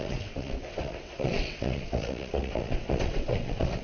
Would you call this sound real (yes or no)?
no